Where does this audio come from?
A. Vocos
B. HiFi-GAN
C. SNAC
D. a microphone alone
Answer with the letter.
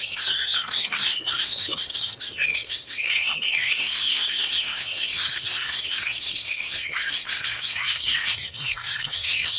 C